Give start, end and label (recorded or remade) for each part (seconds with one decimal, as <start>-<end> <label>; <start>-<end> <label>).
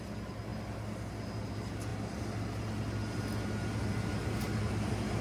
0.0-5.2 recorded